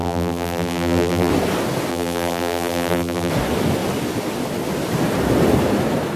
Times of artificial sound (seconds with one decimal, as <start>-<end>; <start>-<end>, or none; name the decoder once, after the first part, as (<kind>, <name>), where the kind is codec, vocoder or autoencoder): 0.0-1.3 (vocoder, BigVGAN v2); 1.9-3.3